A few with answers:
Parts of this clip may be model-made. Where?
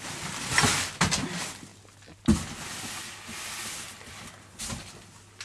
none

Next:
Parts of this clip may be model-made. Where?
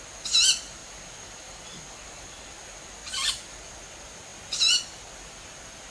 none